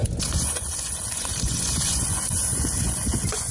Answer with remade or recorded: remade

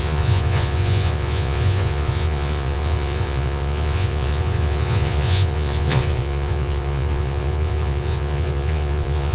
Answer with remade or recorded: remade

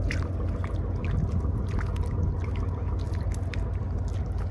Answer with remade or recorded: recorded